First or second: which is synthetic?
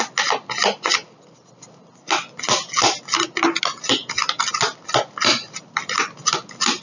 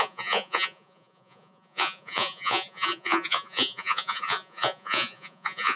second